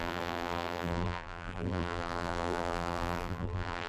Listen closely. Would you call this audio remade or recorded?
remade